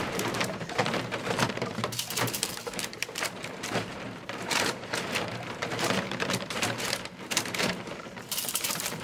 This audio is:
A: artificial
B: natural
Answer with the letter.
A